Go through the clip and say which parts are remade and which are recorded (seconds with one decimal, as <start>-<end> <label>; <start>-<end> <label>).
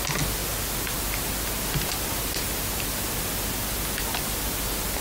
0.0-5.0 recorded